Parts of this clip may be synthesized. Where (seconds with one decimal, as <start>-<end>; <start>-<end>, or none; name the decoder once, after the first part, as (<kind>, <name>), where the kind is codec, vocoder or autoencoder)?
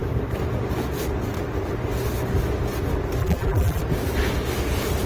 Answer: 3.2-3.8 (vocoder, BigVGAN v2)